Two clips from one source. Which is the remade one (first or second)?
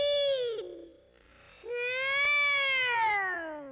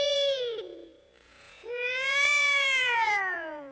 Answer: second